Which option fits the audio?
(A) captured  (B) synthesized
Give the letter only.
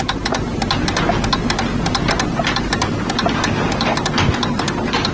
A